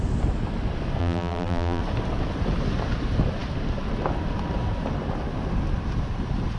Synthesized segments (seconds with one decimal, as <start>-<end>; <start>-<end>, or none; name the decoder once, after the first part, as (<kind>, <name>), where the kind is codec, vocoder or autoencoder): 1.0-1.8 (vocoder, BigVGAN v2)